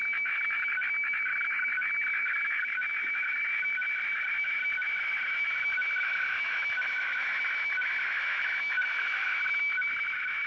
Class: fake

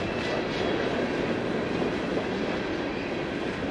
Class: real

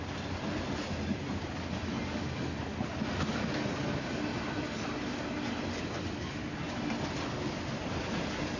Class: real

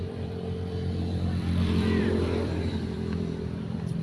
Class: fake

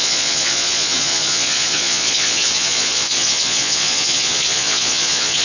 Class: fake